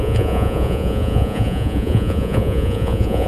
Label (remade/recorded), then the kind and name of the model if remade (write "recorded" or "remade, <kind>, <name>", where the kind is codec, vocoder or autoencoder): remade, vocoder, Vocos